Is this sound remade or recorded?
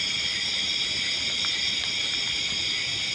recorded